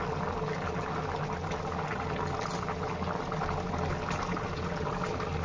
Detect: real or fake real